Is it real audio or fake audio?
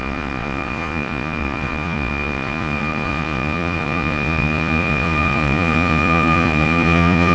fake